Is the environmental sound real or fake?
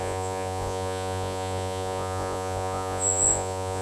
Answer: fake